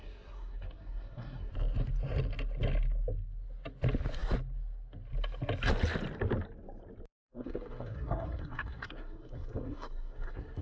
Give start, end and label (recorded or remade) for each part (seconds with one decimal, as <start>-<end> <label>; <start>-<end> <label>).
0.0-1.5 remade; 1.5-7.1 recorded; 7.1-10.6 remade